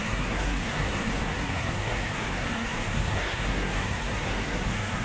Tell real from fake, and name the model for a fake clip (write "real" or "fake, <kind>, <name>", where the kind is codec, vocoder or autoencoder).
fake, codec, SNAC